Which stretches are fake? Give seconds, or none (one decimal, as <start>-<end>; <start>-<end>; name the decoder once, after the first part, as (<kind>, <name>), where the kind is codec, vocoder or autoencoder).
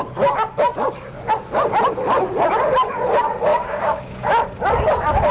3.5-4.3 (codec, DAC)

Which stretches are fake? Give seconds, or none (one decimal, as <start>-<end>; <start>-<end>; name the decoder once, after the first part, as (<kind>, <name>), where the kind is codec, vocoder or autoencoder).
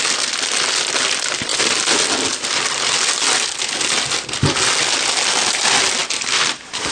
none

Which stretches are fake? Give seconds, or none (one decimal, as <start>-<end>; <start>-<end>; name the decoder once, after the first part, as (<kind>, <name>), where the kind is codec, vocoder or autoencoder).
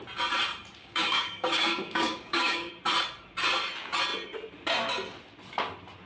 0.8-2.7 (codec, DAC)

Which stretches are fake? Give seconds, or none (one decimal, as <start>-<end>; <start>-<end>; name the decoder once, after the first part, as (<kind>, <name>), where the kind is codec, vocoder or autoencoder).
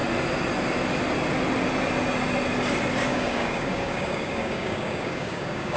3.1-5.8 (codec, DAC)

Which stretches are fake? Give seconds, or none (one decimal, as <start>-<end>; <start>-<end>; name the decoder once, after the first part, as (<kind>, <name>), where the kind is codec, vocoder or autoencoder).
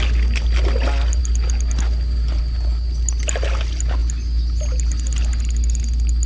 none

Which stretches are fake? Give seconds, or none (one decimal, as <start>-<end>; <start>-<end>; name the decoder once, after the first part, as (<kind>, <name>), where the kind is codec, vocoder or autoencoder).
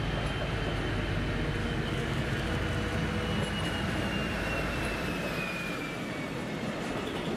1.6-2.5 (codec, DAC)